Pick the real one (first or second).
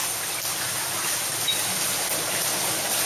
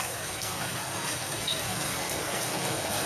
first